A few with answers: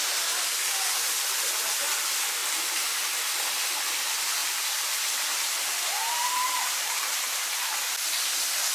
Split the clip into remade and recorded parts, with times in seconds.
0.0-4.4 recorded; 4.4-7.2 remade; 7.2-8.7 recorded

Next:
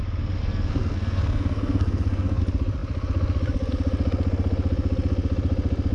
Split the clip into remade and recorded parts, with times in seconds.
0.0-0.4 recorded; 0.4-2.4 remade; 2.4-5.9 recorded

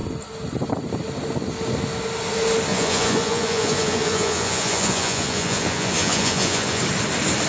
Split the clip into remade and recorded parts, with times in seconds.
0.0-2.7 recorded; 2.7-6.8 remade; 6.8-7.5 recorded

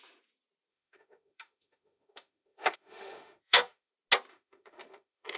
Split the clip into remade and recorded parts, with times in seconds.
0.0-0.7 recorded; 0.7-3.9 remade; 3.9-4.3 recorded; 4.3-5.4 remade

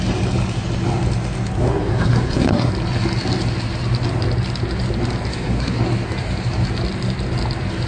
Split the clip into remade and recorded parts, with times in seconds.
0.0-1.6 recorded; 1.6-2.7 remade; 2.7-5.3 recorded; 5.3-5.8 remade; 5.8-7.9 recorded

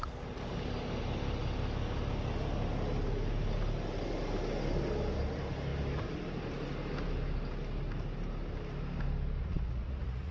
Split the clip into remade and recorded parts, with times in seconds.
0.0-9.4 recorded; 9.4-10.3 remade

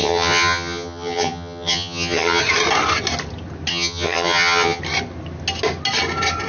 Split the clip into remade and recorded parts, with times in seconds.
0.0-2.4 remade; 2.4-3.7 recorded; 3.7-4.8 remade; 4.8-6.5 recorded

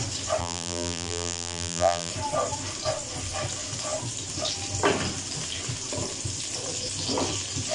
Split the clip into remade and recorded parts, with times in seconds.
0.0-0.4 recorded; 0.4-2.1 remade; 2.1-7.7 recorded